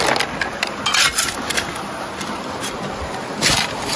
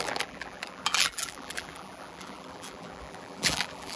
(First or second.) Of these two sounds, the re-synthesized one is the second